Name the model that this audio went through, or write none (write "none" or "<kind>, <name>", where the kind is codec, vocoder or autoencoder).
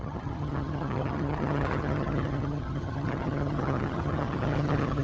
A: vocoder, HiFi-GAN